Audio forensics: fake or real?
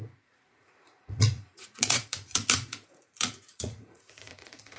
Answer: fake